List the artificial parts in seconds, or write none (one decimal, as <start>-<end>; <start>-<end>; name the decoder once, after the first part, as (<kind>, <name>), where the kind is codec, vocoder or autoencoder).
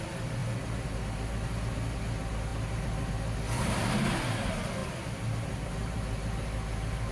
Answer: 4.8-7.1 (vocoder, BigVGAN v2)